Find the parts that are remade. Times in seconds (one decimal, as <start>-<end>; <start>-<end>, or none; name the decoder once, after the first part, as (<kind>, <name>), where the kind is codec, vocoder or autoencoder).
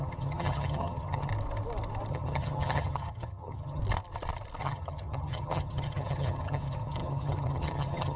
0.0-1.3 (vocoder, HiFi-GAN); 2.1-3.8; 4.6-8.2